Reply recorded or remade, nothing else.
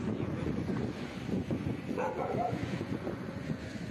remade